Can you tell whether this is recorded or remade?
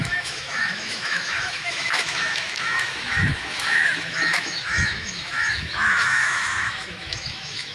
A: remade